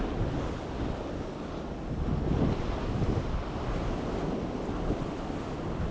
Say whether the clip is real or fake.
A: real